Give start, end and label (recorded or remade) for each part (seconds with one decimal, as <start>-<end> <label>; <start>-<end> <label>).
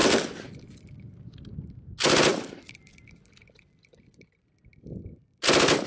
0.0-0.9 remade; 0.9-2.3 recorded; 2.3-4.7 remade; 4.7-5.9 recorded